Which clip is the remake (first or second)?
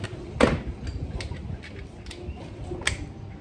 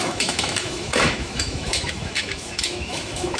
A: second